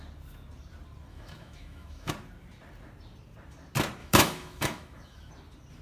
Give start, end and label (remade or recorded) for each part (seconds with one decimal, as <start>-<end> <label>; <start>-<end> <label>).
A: 0.0-1.1 recorded; 1.1-2.1 remade; 2.1-4.0 recorded; 4.0-5.3 remade; 5.3-5.8 recorded